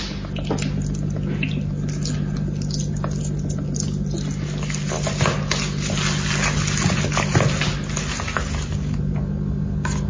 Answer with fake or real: real